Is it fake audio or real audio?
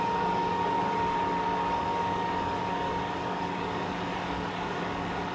fake